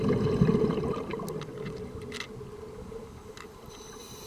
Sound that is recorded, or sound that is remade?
recorded